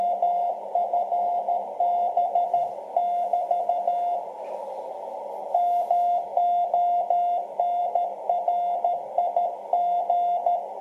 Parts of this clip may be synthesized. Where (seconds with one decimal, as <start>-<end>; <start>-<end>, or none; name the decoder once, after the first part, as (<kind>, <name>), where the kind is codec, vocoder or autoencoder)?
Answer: none